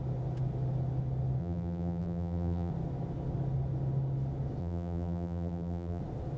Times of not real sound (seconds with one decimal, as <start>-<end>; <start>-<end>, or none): 1.4-2.7; 4.6-6.0

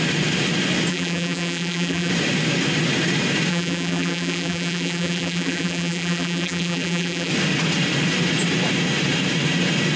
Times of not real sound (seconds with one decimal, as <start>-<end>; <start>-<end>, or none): 0.9-2.1; 3.5-7.3